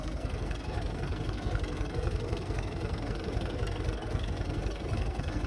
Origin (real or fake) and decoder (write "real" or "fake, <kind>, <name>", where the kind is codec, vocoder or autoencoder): fake, codec, SNAC